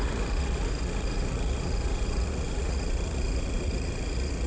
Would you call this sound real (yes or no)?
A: no